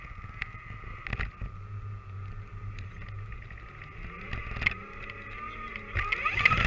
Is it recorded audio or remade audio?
recorded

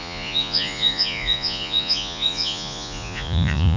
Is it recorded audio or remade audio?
remade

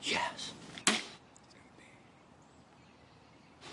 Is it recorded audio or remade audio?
recorded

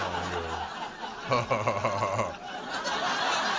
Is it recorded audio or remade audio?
recorded